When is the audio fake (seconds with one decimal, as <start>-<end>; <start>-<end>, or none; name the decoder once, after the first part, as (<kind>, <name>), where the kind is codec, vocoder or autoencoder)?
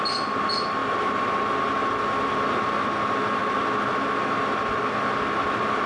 none